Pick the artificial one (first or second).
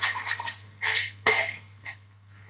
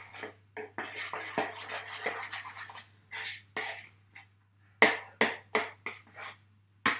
first